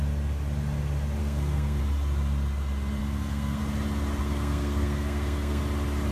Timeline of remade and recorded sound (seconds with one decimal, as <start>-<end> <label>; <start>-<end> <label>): 0.0-1.2 recorded; 1.2-1.8 remade; 1.8-3.0 recorded; 3.0-3.6 remade; 3.6-4.2 recorded; 4.2-5.6 remade; 5.6-6.1 recorded